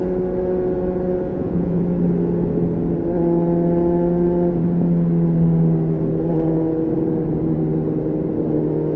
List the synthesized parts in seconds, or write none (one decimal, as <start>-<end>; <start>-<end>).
1.3-1.8